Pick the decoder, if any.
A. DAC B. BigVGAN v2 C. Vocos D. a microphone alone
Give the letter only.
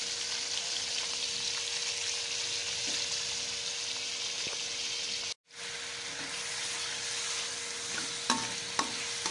D